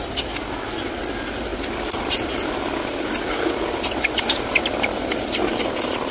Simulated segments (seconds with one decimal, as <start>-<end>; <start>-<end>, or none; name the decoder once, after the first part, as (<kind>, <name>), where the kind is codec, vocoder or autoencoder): none